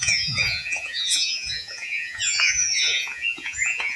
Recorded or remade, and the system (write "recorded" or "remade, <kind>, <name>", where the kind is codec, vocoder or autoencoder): remade, vocoder, Vocos